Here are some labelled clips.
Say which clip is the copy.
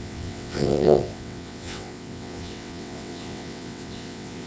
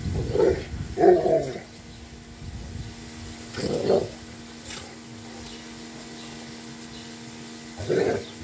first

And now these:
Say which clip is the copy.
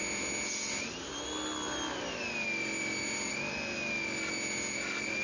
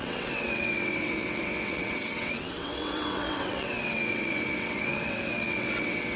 second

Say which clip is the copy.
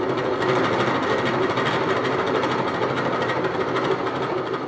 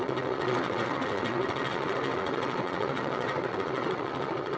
second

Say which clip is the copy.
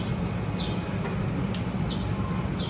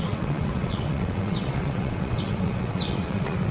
second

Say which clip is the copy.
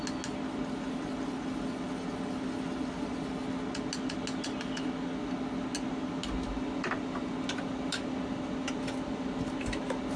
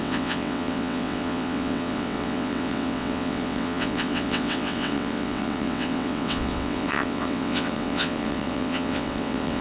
second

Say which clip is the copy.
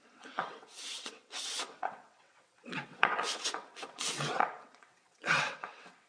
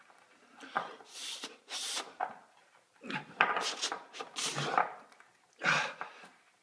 first